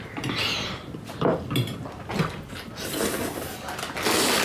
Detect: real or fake real